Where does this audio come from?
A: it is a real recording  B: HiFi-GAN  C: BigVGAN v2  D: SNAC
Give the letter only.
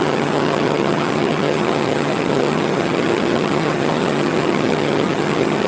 B